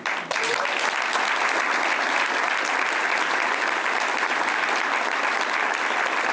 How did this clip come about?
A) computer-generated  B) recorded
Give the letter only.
B